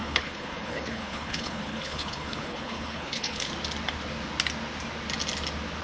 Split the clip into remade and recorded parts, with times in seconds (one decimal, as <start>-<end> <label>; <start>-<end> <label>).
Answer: 0.0-3.5 remade; 3.5-5.8 recorded